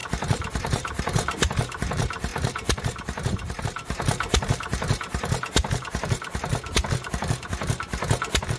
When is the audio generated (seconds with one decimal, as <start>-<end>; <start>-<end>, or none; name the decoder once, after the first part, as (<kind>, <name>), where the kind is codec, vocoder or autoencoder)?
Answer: 0.0-6.5 (vocoder, BigVGAN v2)